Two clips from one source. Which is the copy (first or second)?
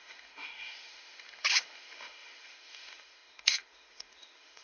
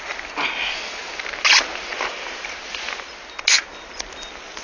first